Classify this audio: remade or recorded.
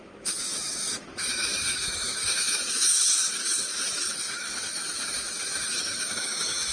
remade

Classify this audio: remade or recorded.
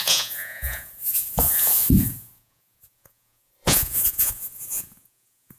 remade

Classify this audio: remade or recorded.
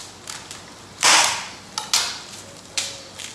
recorded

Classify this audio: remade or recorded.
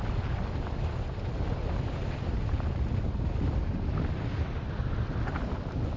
recorded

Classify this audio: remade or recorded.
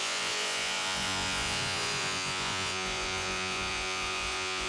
remade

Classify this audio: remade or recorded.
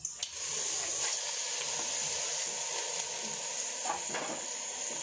recorded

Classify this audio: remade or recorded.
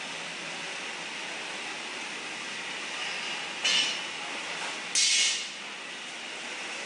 recorded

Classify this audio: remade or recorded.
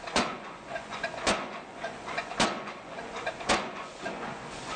remade